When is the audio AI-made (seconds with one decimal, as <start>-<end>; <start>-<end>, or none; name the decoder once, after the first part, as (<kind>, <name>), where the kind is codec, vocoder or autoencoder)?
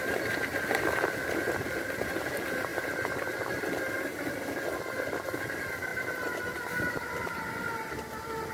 none